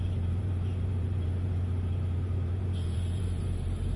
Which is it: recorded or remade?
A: remade